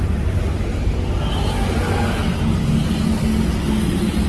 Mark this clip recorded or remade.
recorded